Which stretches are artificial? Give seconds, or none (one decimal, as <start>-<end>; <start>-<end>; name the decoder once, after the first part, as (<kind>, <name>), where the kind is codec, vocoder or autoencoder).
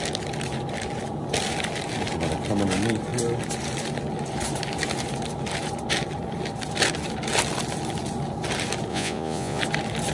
8.9-9.6 (vocoder, Vocos)